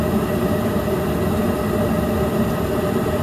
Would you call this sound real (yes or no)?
yes